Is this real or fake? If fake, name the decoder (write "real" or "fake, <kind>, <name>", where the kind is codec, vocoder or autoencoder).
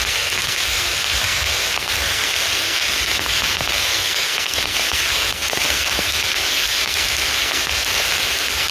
fake, codec, SNAC